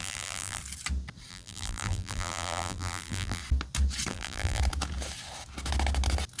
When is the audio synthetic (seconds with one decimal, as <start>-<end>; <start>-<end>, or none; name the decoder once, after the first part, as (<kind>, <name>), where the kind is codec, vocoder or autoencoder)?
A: 0.0-0.6 (vocoder, BigVGAN v2); 1.3-3.4; 4.1-4.6